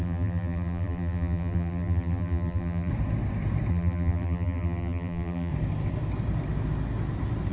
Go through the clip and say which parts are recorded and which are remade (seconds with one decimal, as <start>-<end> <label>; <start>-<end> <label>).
0.0-2.9 remade; 2.9-3.7 recorded; 3.7-5.5 remade; 5.5-7.5 recorded